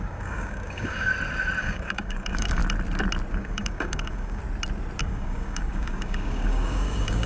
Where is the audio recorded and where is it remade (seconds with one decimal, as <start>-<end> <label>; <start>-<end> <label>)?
0.0-1.1 remade; 1.1-1.6 recorded; 1.6-2.6 remade; 2.6-3.3 recorded; 3.3-4.4 remade; 4.4-5.0 recorded; 5.0-7.3 remade